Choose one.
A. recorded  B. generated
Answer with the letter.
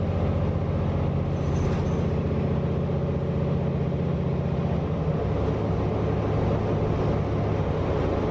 A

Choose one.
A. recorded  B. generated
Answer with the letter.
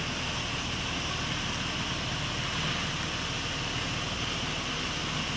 A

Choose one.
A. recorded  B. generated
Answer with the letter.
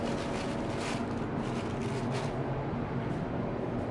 A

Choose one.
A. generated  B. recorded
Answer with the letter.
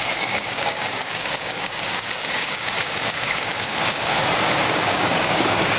A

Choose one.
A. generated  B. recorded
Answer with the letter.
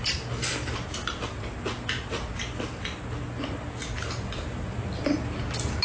B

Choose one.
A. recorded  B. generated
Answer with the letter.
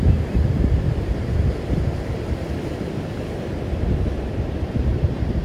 B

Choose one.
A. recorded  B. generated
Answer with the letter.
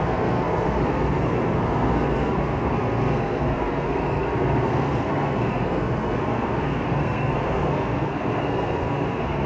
B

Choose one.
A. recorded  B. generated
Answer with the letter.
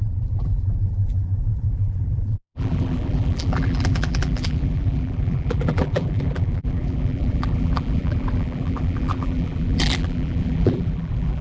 B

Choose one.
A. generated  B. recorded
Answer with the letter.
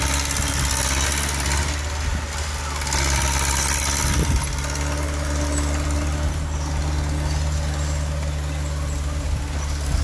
B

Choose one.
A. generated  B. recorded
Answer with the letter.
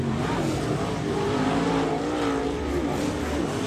B